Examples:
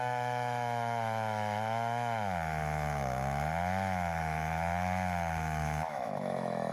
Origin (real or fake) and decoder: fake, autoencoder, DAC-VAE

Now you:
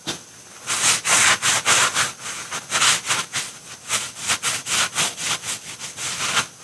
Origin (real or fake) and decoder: real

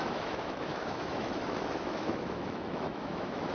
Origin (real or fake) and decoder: fake, autoencoder, DAC-VAE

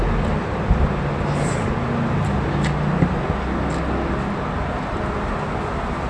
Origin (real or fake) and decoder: real